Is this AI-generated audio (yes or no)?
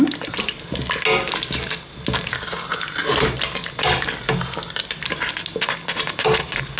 no